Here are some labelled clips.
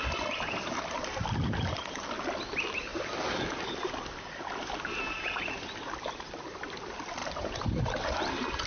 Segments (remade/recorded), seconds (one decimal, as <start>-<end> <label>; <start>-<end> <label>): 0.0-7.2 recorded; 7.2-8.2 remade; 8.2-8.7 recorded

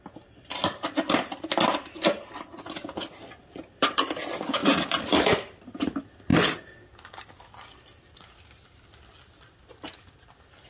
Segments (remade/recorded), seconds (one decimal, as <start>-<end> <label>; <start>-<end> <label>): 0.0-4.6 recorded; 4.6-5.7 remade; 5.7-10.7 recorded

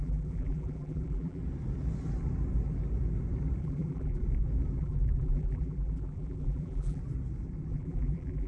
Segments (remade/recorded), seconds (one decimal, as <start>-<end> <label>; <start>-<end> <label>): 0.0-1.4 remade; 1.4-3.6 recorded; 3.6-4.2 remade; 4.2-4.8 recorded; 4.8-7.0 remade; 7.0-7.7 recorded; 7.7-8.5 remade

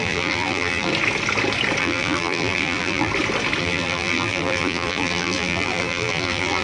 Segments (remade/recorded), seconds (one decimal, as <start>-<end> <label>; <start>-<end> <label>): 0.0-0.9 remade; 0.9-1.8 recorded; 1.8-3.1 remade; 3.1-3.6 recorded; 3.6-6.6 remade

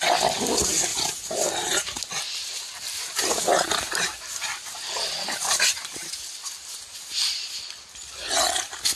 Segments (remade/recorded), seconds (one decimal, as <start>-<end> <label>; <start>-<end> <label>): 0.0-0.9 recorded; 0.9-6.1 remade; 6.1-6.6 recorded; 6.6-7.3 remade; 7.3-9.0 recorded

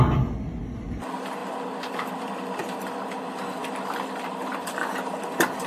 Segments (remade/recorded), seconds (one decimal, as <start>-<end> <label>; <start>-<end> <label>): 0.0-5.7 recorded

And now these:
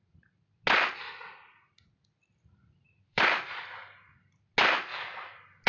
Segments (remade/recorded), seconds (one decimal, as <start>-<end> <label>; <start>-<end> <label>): 0.0-2.2 recorded; 2.2-3.2 remade; 3.2-5.7 recorded

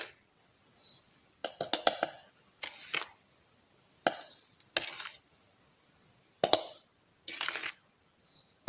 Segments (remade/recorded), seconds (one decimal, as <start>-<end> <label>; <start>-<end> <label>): 0.0-2.8 recorded; 2.8-6.3 remade; 6.3-8.7 recorded